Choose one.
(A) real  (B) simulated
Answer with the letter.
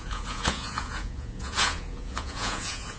B